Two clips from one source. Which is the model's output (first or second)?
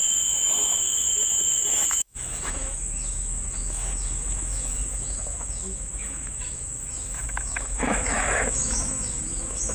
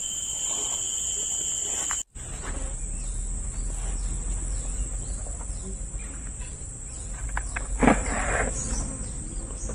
first